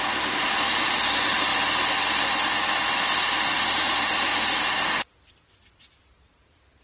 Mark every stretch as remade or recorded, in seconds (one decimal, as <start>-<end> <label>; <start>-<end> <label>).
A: 0.0-1.5 remade; 1.5-3.7 recorded; 3.7-4.3 remade; 4.3-5.3 recorded; 5.3-6.8 remade